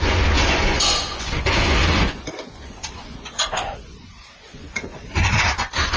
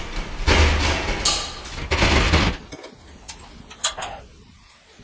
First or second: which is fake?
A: first